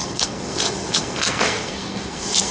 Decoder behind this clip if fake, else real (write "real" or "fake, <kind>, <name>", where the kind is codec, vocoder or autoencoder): fake, codec, SNAC